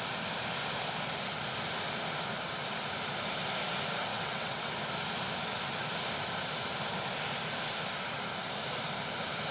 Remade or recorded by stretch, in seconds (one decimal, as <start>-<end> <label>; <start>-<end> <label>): 0.0-4.1 recorded; 4.1-4.7 remade; 4.7-9.5 recorded